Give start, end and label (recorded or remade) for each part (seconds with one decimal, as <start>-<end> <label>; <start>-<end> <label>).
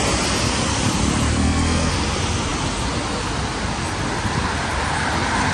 0.0-1.3 recorded; 1.3-1.9 remade; 1.9-5.5 recorded